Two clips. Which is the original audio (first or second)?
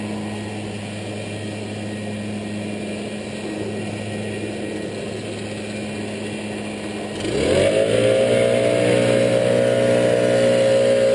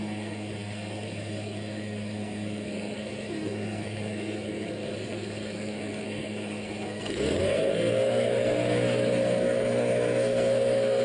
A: first